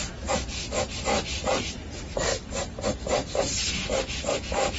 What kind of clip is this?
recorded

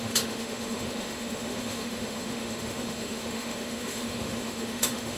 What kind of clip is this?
remade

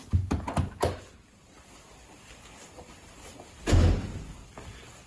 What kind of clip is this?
recorded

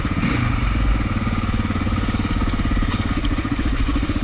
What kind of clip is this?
remade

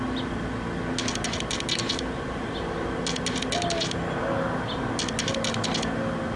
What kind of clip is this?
recorded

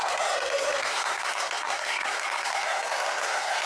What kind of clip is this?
remade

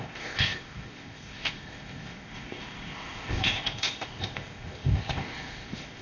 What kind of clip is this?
remade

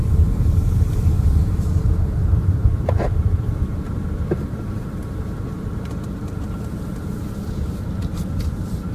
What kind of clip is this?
remade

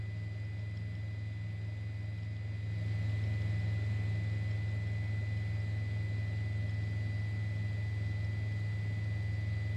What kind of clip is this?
recorded